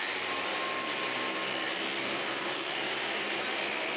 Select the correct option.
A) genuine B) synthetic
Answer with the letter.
A